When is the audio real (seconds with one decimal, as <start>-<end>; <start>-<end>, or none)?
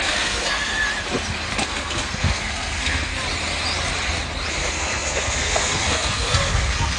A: 0.7-1.6; 3.1-4.5